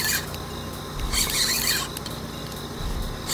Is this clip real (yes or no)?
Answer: yes